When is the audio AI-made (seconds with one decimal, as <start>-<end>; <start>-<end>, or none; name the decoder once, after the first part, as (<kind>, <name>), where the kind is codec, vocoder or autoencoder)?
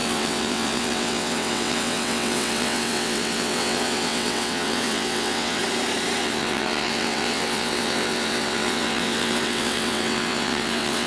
0.0-5.6 (vocoder, WaveNeXt); 6.2-11.1